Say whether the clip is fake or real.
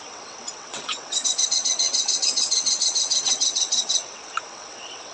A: fake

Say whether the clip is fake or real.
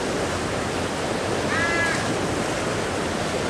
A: real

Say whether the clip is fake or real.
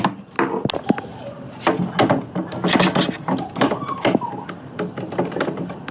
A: real